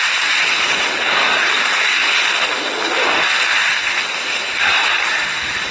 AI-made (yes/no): yes